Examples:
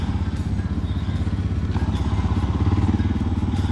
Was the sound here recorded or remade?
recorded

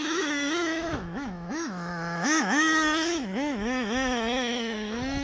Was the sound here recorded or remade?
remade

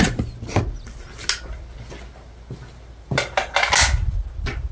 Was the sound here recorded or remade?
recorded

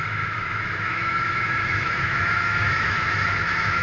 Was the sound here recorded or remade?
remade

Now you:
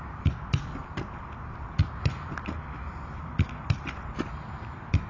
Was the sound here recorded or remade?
recorded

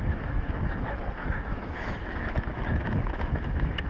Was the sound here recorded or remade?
remade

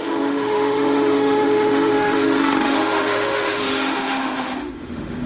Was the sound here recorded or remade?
remade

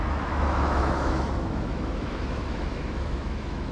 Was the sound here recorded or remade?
remade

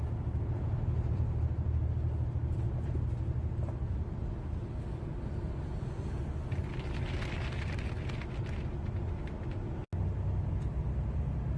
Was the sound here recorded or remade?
recorded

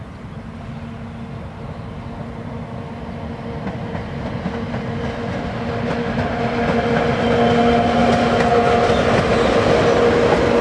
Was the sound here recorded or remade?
recorded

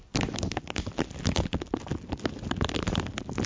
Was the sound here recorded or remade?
recorded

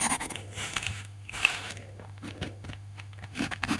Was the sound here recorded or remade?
remade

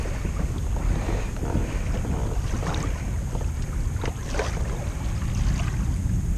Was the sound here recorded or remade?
recorded